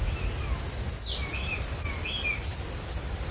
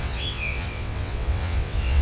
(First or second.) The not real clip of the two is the second